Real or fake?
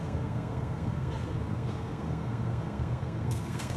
fake